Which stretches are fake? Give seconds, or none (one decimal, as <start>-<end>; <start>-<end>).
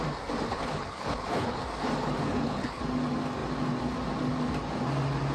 0.5-1.6; 2.3-2.8